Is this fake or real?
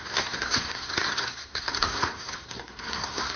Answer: fake